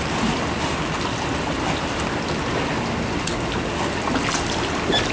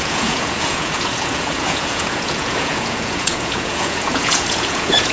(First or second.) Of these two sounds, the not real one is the second